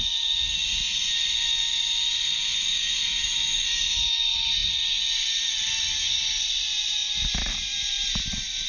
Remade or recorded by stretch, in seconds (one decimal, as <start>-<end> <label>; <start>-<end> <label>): 0.0-8.7 recorded